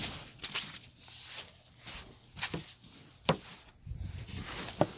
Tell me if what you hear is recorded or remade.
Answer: recorded